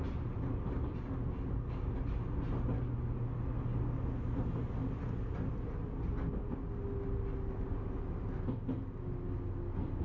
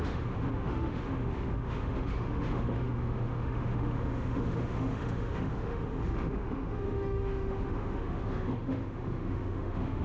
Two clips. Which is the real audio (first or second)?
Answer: first